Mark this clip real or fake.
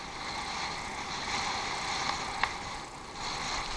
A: real